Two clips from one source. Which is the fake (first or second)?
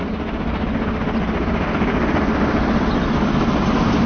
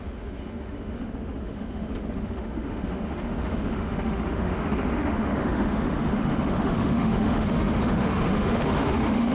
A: second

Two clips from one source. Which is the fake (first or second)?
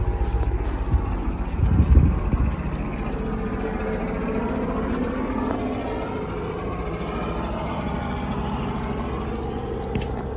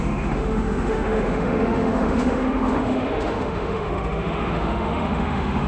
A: second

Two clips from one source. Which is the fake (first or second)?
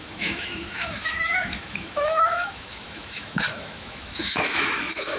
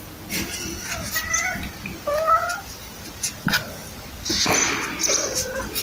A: first